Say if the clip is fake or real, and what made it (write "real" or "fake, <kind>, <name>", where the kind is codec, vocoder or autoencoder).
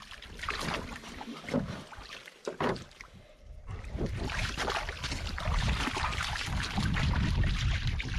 real